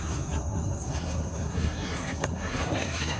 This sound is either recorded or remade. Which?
remade